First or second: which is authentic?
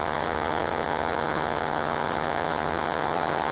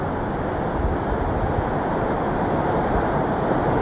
second